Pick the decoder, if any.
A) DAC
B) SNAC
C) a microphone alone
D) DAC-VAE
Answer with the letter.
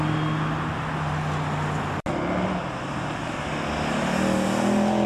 C